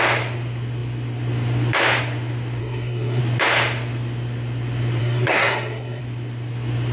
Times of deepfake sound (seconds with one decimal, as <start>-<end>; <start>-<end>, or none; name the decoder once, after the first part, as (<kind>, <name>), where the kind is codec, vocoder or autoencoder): 2.6-3.2 (codec, SNAC); 5.0-6.0